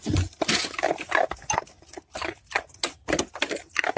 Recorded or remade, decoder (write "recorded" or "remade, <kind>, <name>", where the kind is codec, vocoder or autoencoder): recorded